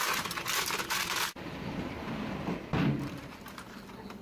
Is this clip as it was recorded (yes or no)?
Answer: yes